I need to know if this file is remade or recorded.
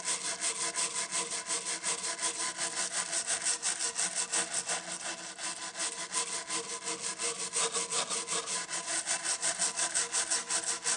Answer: recorded